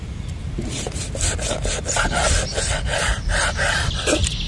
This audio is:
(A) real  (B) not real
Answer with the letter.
A